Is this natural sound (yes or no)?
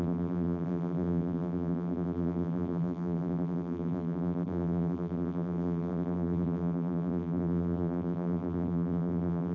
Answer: no